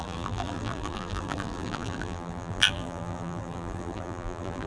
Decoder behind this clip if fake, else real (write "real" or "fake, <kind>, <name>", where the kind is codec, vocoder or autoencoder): fake, vocoder, BigVGAN v2